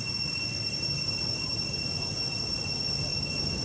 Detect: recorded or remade recorded